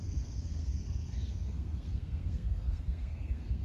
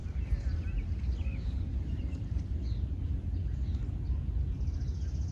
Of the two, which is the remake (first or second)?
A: first